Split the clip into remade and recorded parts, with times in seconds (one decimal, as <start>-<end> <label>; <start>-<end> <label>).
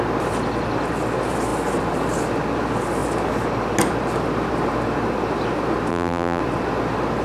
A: 0.0-5.9 recorded; 5.9-6.4 remade; 6.4-7.2 recorded